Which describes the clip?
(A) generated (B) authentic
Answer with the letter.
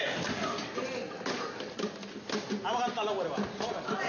B